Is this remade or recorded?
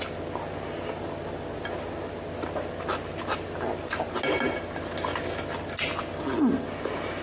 recorded